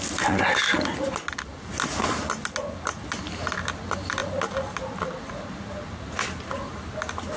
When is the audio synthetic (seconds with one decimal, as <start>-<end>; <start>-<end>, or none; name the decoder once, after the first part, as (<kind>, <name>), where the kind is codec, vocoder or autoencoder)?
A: none